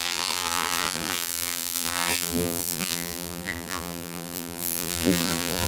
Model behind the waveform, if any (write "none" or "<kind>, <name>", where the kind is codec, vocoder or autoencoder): vocoder, BigVGAN v2